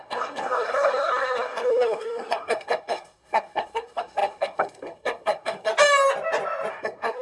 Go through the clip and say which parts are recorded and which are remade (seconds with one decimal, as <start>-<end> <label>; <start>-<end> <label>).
0.0-5.7 remade; 5.7-6.7 recorded; 6.7-7.2 remade